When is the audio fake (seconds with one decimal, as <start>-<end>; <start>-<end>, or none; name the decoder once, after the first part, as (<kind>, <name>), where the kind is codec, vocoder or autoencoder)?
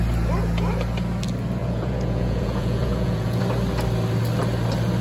1.6-3.4 (vocoder, Vocos)